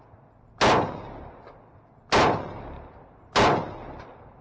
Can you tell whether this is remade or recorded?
recorded